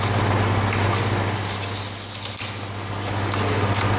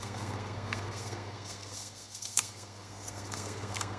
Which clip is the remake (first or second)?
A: second